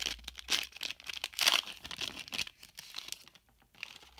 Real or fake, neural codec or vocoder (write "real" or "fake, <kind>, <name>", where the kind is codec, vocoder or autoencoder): real